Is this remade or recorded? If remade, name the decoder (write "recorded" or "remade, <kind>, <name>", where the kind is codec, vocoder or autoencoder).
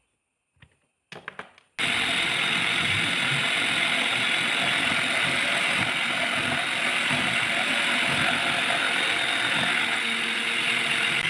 recorded